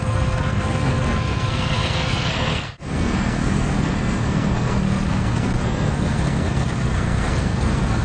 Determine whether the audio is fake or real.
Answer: fake